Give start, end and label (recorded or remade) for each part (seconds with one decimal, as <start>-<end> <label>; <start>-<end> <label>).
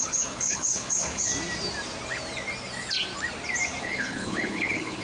0.0-1.3 remade; 1.3-3.8 recorded; 3.8-5.0 remade